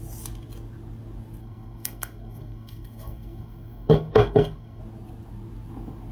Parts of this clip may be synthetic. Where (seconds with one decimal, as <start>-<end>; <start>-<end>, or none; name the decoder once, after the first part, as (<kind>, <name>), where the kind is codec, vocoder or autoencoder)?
1.4-4.8 (codec, SNAC)